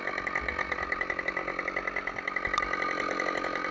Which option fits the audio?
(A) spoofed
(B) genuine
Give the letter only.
B